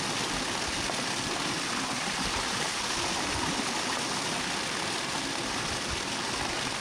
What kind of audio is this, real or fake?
real